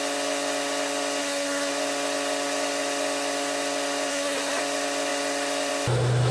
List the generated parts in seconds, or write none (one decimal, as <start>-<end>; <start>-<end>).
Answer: 1.2-1.7; 4.1-4.6